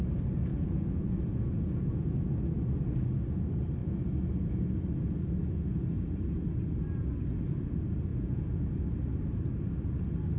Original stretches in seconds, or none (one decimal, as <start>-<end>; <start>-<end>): 0.0-0.5; 2.3-8.1; 8.7-10.4